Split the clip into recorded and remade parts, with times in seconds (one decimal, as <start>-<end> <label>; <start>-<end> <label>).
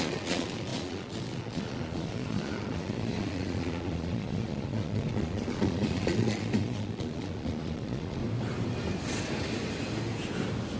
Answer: 0.0-8.2 remade; 8.2-10.8 recorded